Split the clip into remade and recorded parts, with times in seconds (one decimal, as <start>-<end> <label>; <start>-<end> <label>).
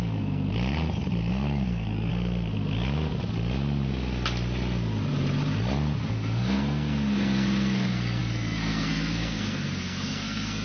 0.0-0.5 remade; 0.5-1.3 recorded; 1.3-2.1 remade; 2.1-6.1 recorded; 6.1-10.6 remade